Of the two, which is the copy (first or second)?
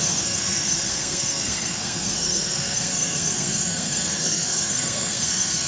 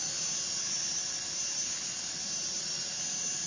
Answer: first